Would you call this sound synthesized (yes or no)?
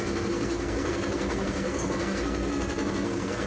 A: yes